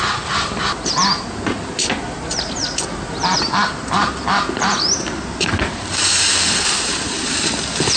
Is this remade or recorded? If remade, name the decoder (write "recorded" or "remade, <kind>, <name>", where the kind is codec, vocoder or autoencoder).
recorded